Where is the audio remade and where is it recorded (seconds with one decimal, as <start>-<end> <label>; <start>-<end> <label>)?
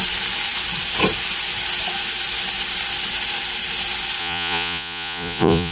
0.0-4.2 recorded; 4.2-5.7 remade